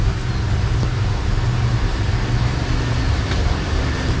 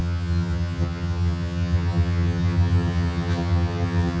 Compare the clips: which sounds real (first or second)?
first